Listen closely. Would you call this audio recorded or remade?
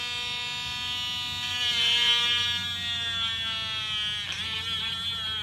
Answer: recorded